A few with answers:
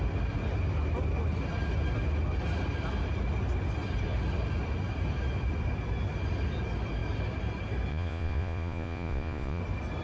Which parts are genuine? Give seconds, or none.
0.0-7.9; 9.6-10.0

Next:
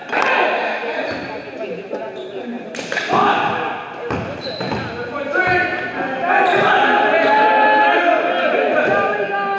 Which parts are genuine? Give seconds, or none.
0.0-9.6